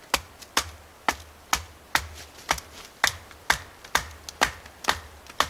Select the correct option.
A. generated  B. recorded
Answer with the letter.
B